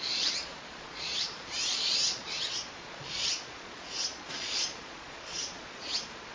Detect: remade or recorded remade